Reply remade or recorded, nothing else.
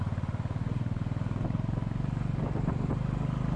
recorded